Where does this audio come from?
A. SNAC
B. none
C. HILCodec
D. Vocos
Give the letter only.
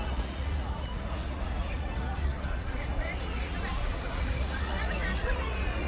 D